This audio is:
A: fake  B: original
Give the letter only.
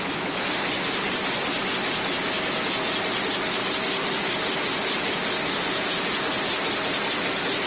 B